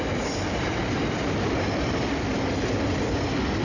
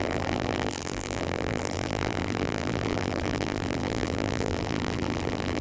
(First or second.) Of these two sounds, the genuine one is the first